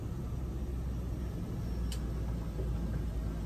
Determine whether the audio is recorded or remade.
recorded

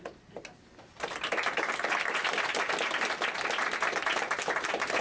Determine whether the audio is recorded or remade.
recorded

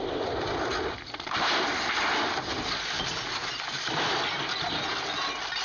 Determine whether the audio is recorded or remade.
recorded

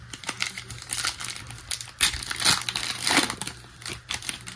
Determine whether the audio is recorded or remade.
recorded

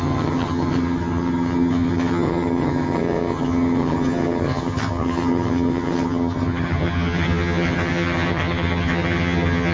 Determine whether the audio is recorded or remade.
remade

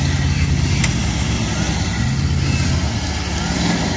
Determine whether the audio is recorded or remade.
recorded